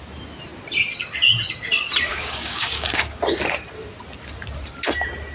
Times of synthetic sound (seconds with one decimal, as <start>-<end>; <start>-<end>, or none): 2.1-3.2